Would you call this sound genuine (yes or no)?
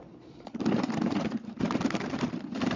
no